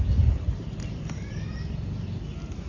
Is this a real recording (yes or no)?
yes